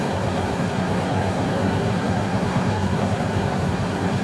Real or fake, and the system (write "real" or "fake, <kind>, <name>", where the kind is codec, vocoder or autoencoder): fake, codec, SNAC